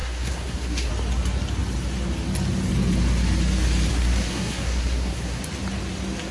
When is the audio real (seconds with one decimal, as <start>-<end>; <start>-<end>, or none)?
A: 0.9-3.9; 5.4-6.3